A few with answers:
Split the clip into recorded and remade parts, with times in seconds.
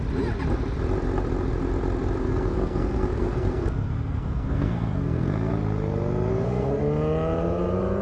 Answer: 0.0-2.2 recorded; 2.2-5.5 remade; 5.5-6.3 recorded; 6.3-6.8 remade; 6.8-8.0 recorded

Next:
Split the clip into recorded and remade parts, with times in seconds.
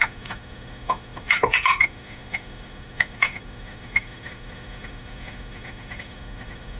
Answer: 0.0-6.8 remade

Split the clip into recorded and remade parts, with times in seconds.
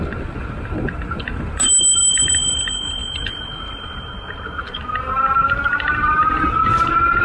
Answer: 0.0-2.0 recorded; 2.0-2.6 remade; 2.6-7.2 recorded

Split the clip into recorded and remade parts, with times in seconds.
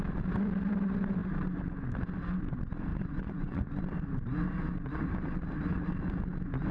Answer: 0.0-2.9 recorded; 2.9-3.8 remade; 3.8-6.7 recorded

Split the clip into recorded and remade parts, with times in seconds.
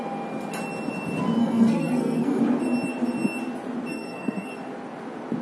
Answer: 0.0-1.4 recorded; 1.4-2.4 remade; 2.4-3.9 recorded; 3.9-4.5 remade; 4.5-5.4 recorded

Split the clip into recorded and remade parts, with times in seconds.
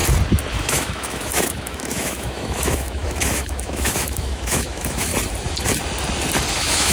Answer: 0.0-0.5 recorded; 0.5-5.1 remade; 5.1-6.5 recorded; 6.5-6.9 remade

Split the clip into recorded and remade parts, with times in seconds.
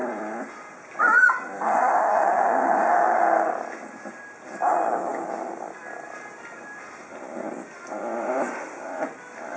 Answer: 0.0-1.3 recorded; 1.3-9.6 remade